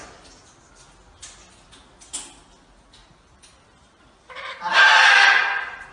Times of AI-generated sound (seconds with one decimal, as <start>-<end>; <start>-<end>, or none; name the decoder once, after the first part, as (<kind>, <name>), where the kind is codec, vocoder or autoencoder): 3.0-4.9 (vocoder, BigVGAN v2)